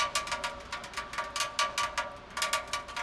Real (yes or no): yes